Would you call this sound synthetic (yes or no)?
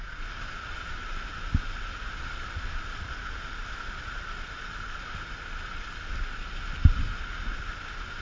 no